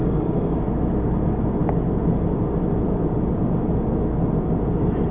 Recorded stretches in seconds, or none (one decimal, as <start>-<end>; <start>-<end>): 0.6-5.1